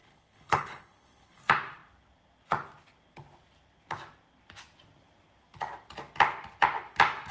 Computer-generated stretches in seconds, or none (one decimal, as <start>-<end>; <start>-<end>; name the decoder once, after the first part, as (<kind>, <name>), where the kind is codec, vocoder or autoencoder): 0.0-1.4 (codec, HILCodec)